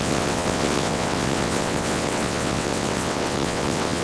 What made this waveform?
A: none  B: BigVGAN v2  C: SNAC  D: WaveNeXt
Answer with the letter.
D